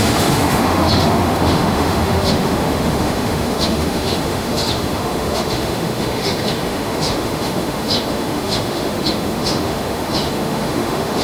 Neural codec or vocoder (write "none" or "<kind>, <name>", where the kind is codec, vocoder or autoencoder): autoencoder, DAC-VAE